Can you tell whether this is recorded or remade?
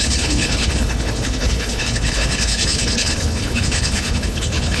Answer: remade